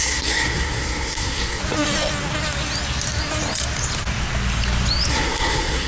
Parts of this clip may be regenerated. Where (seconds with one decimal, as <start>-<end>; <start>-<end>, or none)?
0.0-1.6; 5.1-5.9